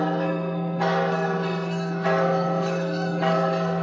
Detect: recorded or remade remade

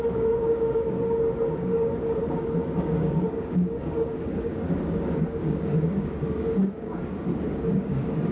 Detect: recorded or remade remade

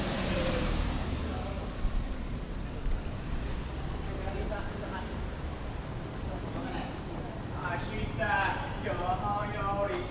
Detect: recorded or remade remade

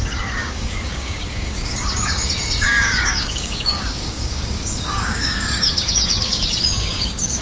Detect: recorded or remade remade